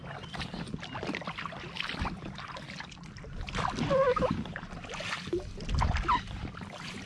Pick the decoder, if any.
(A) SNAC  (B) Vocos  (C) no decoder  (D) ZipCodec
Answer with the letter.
C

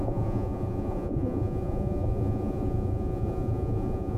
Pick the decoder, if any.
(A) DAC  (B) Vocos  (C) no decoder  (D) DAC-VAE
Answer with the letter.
B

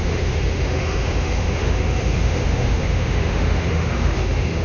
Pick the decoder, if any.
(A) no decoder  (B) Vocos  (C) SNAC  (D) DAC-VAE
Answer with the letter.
D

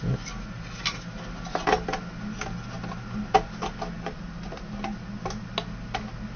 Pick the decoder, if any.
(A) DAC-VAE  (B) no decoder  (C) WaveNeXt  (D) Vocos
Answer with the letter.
B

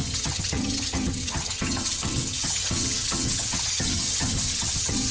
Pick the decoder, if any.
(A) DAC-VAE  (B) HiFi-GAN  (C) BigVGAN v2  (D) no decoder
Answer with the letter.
B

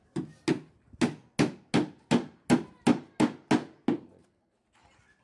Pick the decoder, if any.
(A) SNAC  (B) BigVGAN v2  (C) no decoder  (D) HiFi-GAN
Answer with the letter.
C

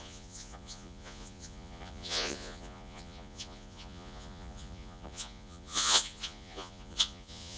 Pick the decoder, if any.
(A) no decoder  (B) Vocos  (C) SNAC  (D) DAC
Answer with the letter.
B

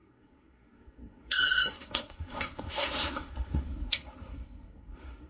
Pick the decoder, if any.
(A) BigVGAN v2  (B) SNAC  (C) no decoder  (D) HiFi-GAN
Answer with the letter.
B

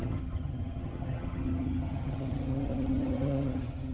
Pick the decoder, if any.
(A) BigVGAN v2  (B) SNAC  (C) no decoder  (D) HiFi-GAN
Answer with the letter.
D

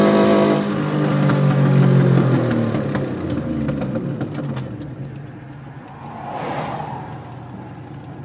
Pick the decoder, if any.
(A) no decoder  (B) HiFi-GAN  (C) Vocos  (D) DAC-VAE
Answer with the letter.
A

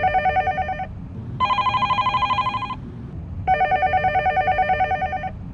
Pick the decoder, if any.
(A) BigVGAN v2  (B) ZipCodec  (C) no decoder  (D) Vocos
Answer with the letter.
C